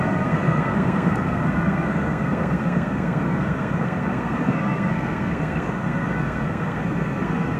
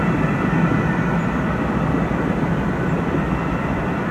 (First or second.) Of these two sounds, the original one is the second